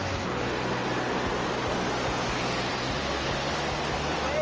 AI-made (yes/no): no